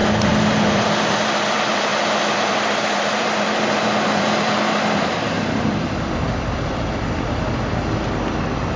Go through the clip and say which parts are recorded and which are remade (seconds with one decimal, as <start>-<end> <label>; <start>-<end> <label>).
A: 0.0-0.7 recorded; 0.7-8.8 remade